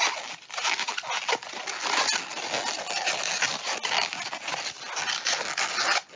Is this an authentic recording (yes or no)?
yes